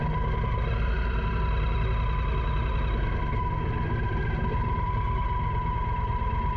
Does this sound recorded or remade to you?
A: recorded